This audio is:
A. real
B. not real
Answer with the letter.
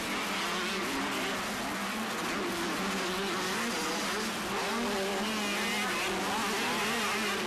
A